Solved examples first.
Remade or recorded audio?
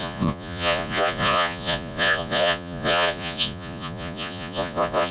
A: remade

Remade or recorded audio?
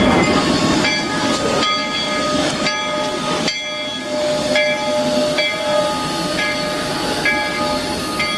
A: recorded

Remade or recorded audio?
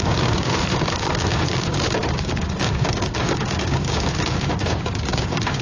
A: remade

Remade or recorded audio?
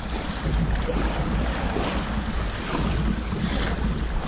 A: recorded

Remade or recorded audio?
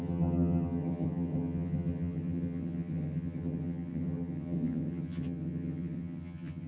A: remade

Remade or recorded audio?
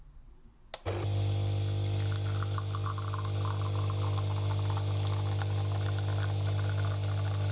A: recorded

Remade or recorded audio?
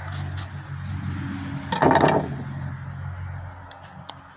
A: recorded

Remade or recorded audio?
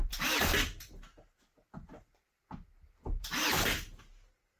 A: recorded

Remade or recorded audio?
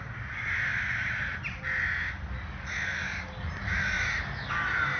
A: recorded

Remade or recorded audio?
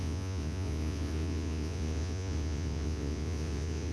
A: remade